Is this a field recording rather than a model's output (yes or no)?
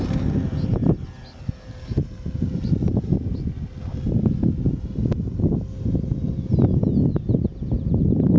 yes